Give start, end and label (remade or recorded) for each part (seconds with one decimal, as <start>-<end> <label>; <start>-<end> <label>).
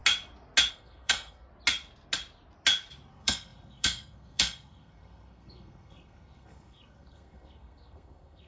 0.0-0.7 recorded; 0.7-1.5 remade; 1.5-3.1 recorded; 3.1-8.5 remade